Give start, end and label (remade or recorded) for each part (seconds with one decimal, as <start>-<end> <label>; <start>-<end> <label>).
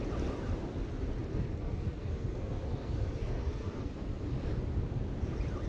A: 0.0-1.3 recorded; 1.3-3.9 remade; 3.9-5.7 recorded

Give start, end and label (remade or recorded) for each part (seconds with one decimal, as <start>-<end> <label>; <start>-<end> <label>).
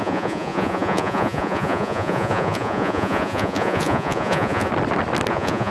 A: 0.0-4.7 remade; 4.7-5.3 recorded; 5.3-5.7 remade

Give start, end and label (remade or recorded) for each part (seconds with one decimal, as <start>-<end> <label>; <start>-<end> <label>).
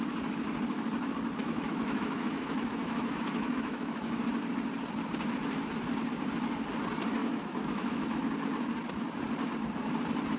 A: 0.0-1.4 recorded; 1.4-4.2 remade; 4.2-7.2 recorded; 7.2-8.3 remade; 8.3-10.4 recorded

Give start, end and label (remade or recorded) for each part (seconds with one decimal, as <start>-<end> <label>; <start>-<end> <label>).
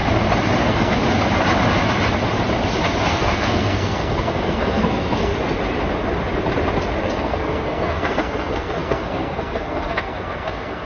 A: 0.0-0.6 recorded; 0.6-1.0 remade; 1.0-3.1 recorded; 3.1-5.3 remade; 5.3-7.0 recorded; 7.0-10.9 remade